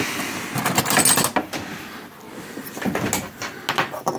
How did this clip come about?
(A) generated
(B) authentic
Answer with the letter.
B